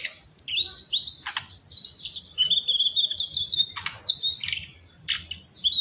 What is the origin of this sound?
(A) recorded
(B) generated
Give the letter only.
A